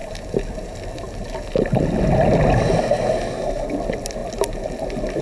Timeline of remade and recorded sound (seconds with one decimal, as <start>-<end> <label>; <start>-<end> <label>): 0.0-5.2 recorded